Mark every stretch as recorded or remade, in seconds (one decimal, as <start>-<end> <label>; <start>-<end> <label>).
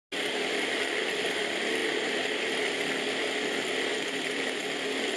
0.0-3.9 recorded; 3.9-4.6 remade; 4.6-5.2 recorded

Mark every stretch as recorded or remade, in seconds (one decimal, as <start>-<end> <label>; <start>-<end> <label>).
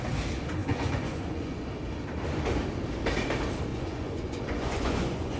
0.0-0.6 recorded; 0.6-1.7 remade; 1.7-3.7 recorded; 3.7-5.4 remade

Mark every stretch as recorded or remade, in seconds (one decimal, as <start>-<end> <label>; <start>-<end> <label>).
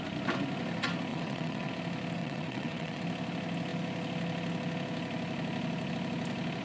0.0-1.1 recorded; 1.1-1.7 remade; 1.7-2.2 recorded; 2.2-3.0 remade; 3.0-6.6 recorded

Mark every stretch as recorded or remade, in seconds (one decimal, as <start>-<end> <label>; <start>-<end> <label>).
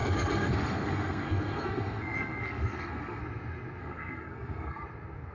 0.0-3.2 remade; 3.2-3.8 recorded; 3.8-4.8 remade; 4.8-5.3 recorded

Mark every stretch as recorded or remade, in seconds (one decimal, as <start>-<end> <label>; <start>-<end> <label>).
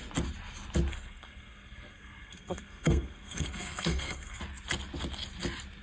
0.0-0.9 recorded; 0.9-4.4 remade; 4.4-5.8 recorded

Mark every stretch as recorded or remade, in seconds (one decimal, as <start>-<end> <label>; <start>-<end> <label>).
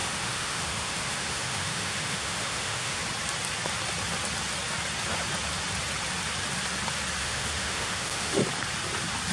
0.0-3.0 remade; 3.0-7.2 recorded; 7.2-8.4 remade; 8.4-9.3 recorded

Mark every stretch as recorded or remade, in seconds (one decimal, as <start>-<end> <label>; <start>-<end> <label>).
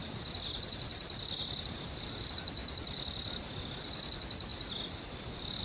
0.0-5.6 recorded